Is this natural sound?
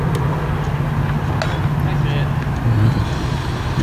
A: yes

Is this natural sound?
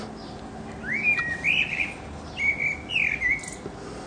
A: yes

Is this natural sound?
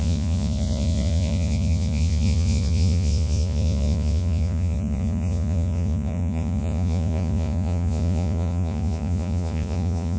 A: no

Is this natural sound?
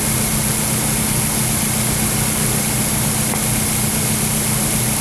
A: yes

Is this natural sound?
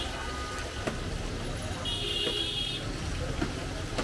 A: yes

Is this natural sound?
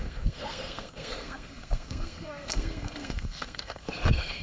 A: no